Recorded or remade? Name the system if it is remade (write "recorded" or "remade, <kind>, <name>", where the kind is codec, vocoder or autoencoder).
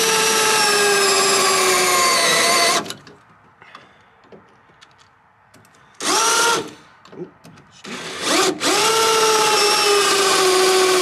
recorded